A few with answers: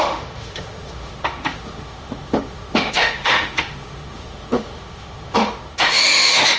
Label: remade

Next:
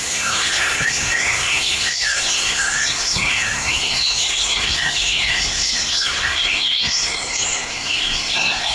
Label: remade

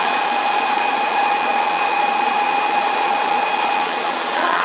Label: remade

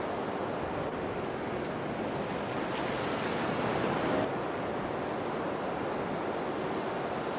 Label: recorded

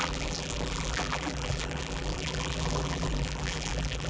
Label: remade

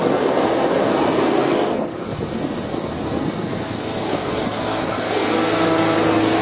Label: remade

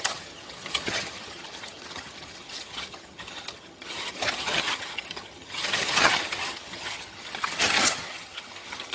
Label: remade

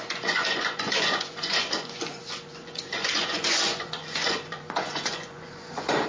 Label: remade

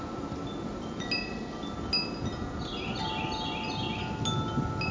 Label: recorded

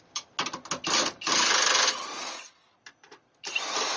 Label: recorded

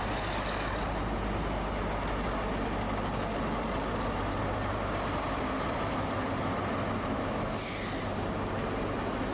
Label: recorded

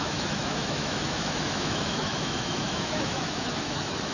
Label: remade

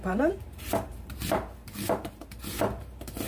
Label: remade